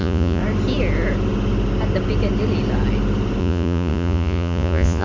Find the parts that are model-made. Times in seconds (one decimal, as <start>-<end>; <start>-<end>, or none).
0.0-0.4; 3.4-5.0